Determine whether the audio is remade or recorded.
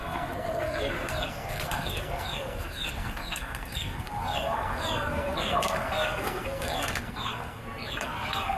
remade